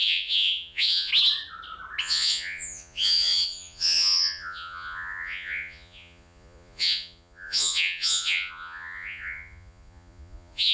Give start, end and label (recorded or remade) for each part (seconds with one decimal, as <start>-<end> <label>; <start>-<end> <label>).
0.0-1.1 remade; 1.1-2.0 recorded; 2.0-10.7 remade